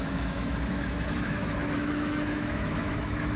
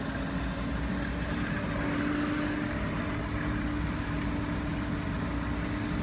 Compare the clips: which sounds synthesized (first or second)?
first